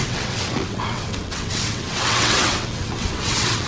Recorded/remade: remade